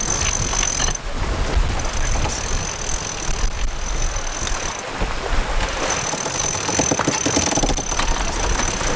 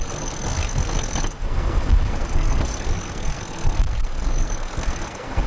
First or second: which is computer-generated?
second